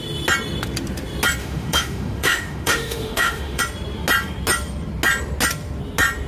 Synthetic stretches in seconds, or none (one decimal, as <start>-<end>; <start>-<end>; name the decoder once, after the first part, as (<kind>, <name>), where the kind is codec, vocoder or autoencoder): 1.4-3.6 (autoencoder, DAC-VAE)